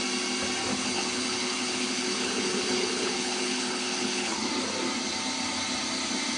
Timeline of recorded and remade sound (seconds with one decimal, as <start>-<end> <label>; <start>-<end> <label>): 0.0-0.7 recorded; 0.7-4.5 remade; 4.5-6.4 recorded